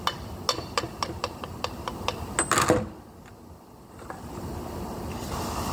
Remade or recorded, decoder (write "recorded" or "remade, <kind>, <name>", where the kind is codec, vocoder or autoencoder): recorded